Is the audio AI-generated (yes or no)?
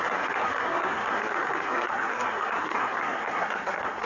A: yes